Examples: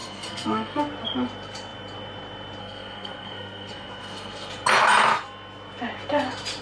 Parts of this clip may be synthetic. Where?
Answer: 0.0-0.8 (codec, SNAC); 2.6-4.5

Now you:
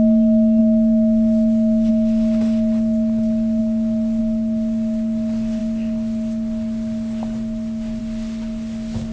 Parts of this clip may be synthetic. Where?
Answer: none

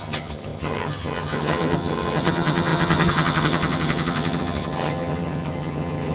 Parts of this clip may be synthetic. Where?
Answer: 0.0-6.1 (vocoder, HiFi-GAN)

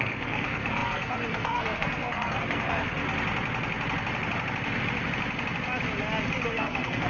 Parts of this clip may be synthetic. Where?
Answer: 0.0-3.0 (codec, SNAC); 6.5-7.1